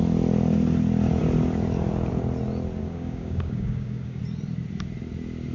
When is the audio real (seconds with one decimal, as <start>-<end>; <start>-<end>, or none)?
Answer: 0.0-2.8; 4.2-5.5